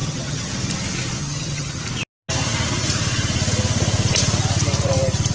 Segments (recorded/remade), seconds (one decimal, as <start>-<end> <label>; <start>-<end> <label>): 0.0-0.5 remade; 0.5-1.2 recorded; 1.2-1.8 remade; 1.8-5.3 recorded